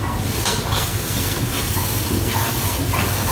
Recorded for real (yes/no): no